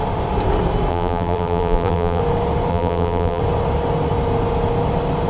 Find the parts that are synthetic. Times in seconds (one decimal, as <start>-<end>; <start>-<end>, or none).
0.9-2.2; 2.7-3.4